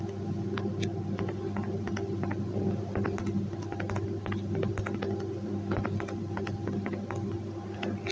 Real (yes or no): yes